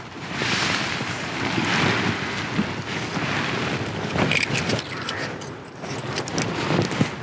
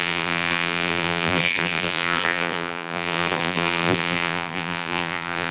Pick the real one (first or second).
first